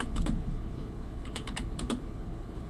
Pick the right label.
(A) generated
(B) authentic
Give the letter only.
A